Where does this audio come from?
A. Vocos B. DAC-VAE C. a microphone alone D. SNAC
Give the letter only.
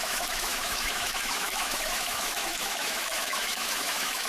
B